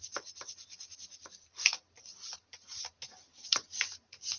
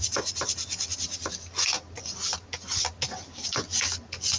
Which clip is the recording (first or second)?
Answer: second